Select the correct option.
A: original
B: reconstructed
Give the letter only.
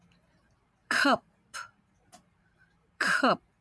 B